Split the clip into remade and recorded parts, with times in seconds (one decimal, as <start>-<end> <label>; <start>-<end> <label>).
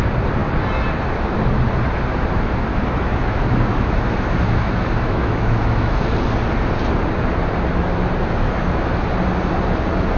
0.0-2.7 recorded; 2.7-6.0 remade; 6.0-10.2 recorded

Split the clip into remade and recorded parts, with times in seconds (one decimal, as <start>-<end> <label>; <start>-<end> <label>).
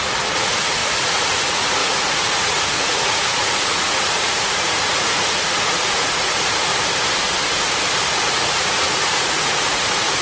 0.0-6.7 remade; 6.7-8.3 recorded; 8.3-10.2 remade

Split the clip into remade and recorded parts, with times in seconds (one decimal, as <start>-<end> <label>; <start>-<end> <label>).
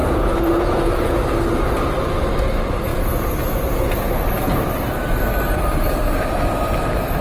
0.0-1.2 remade; 1.2-2.9 recorded; 2.9-3.9 remade; 3.9-7.2 recorded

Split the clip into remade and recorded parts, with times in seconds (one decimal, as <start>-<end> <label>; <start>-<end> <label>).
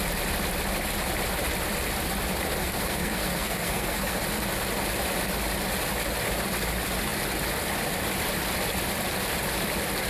0.0-2.6 recorded; 2.6-4.2 remade; 4.2-10.1 recorded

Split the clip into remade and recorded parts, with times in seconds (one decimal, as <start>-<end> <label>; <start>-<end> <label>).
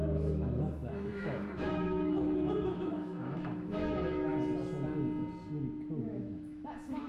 0.0-4.3 remade; 4.3-6.0 recorded; 6.0-7.1 remade